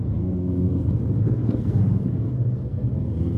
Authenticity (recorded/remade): remade